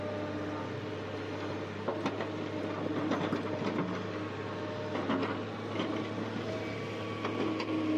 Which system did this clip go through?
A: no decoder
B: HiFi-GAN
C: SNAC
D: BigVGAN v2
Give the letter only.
A